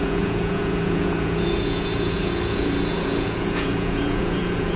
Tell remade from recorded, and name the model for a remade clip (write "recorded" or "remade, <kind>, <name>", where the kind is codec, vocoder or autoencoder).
remade, vocoder, Vocos